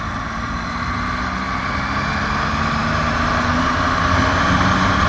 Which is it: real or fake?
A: real